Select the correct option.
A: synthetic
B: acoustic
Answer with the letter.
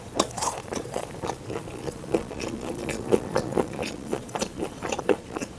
A